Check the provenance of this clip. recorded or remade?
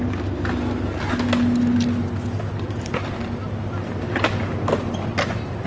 recorded